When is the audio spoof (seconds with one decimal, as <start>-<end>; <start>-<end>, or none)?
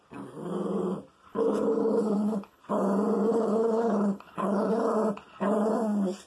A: 1.3-2.6; 3.3-4.7